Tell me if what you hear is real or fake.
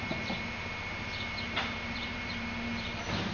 fake